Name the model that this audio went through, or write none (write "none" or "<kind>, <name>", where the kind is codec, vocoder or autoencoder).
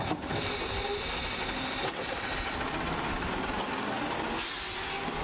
none